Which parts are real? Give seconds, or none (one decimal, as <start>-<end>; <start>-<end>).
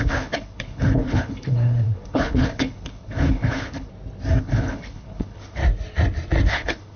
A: 3.9-4.4; 5.6-6.5